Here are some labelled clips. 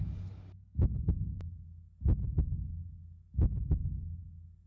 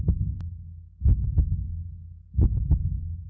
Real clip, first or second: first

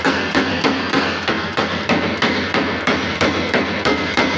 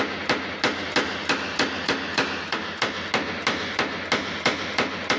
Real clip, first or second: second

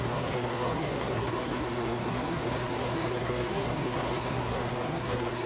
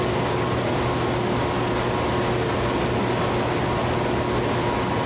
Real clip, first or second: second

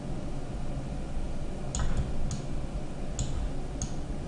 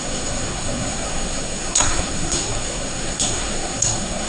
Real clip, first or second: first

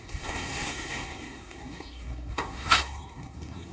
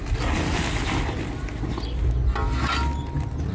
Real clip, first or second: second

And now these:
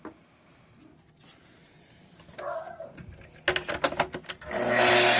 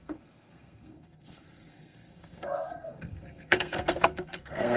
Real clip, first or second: first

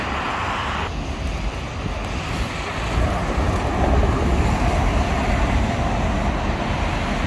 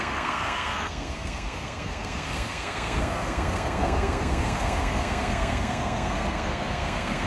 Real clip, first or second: first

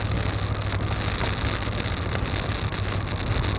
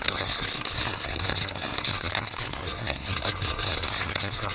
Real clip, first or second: first